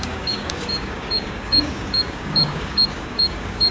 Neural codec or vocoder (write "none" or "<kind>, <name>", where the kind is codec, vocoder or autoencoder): codec, DAC